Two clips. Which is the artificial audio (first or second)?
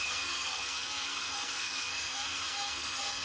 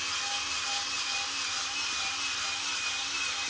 first